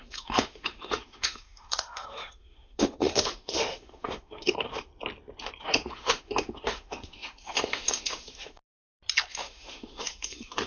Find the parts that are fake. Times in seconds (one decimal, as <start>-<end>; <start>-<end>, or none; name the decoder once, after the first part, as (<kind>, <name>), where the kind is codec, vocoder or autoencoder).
0.0-4.9 (autoencoder, DAC-VAE); 5.6-8.6; 9.3-10.7